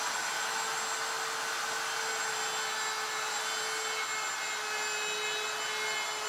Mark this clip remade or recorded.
recorded